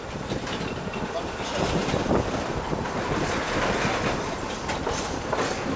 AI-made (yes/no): no